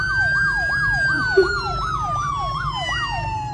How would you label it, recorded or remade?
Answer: remade